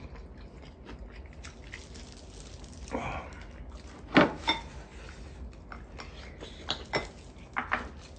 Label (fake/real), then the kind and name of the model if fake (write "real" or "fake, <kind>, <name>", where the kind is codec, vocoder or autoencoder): real